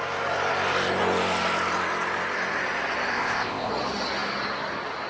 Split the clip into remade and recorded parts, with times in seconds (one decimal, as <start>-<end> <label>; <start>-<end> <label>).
0.0-3.1 recorded; 3.1-3.7 remade; 3.7-5.1 recorded